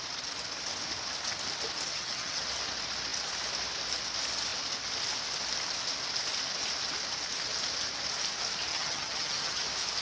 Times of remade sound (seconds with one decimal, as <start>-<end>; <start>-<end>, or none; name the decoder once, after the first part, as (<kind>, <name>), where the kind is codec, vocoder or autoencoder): 1.9-2.4 (vocoder, HiFi-GAN); 8.7-9.6